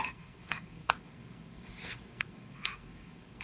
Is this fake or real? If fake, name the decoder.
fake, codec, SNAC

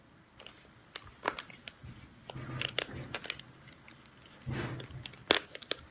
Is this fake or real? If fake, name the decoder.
real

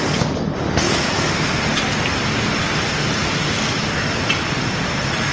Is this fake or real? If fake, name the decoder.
real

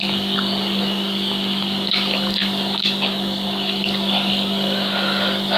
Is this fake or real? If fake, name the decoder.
fake, codec, DAC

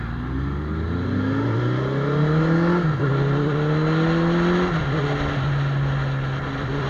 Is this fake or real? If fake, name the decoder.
real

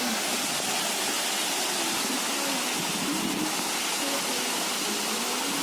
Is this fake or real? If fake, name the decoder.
real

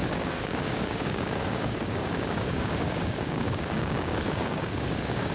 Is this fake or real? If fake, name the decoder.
fake, codec, DAC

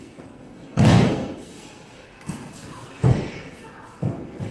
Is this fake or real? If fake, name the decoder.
fake, codec, SNAC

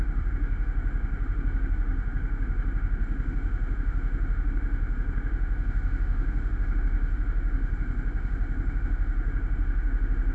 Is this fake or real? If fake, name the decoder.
fake, autoencoder, DAC-VAE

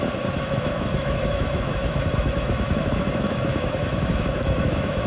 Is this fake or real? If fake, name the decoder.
fake, autoencoder, DAC-VAE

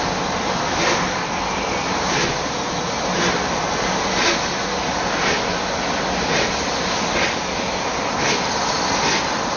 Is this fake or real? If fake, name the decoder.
real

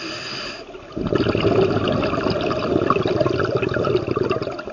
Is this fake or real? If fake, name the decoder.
real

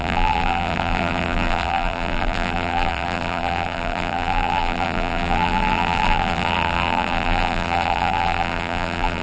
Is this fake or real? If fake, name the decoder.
fake, vocoder, BigVGAN v2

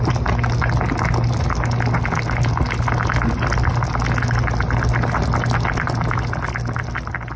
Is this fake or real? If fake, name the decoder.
real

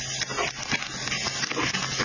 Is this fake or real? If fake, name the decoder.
real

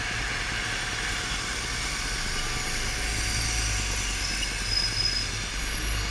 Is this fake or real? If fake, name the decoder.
real